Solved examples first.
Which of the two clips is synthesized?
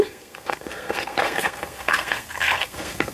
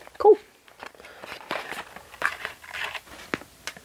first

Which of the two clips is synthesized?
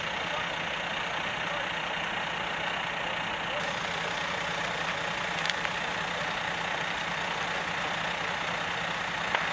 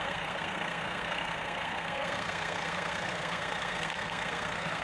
second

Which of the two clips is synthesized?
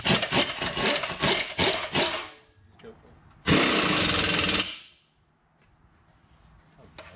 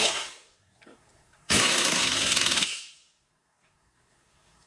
second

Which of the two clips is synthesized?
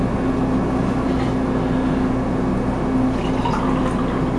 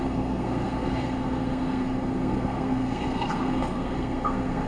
second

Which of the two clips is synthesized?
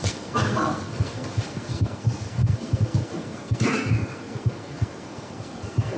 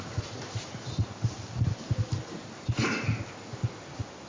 first